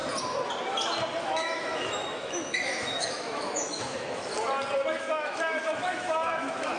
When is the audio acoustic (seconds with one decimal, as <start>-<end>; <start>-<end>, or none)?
0.0-1.2; 4.3-4.9